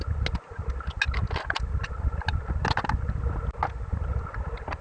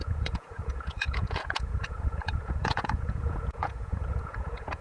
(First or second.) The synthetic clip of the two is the second